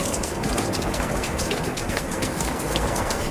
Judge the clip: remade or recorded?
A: remade